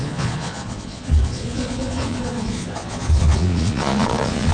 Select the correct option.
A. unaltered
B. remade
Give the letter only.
B